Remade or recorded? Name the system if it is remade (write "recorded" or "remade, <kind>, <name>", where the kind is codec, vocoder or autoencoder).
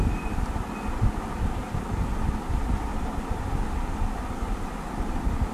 recorded